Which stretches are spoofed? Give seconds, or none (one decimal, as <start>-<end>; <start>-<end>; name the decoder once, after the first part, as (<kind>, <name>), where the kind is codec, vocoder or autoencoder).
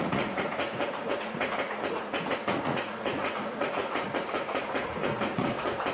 0.0-5.9 (vocoder, Vocos)